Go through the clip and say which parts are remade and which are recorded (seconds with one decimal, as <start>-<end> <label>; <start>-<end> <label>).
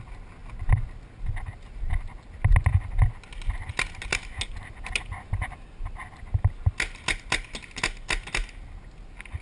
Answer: 0.0-9.4 recorded